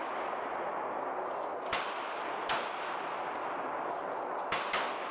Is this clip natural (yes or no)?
yes